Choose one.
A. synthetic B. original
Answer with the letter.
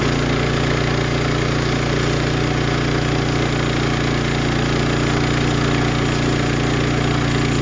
B